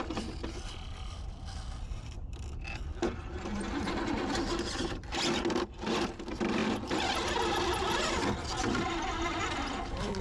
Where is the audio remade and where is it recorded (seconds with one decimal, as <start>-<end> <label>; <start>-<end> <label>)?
0.0-10.2 recorded